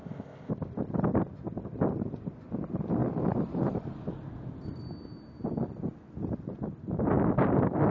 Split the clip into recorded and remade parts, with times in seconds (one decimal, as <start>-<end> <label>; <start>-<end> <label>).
0.0-0.5 remade; 0.5-7.9 recorded